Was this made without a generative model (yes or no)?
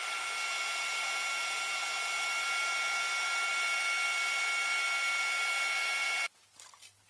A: yes